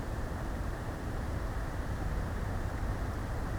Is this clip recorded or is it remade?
remade